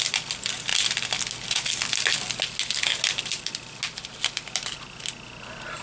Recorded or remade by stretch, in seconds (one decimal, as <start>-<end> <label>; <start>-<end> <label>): 0.0-5.8 recorded